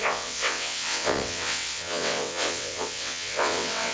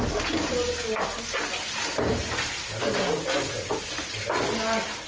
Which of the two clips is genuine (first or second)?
second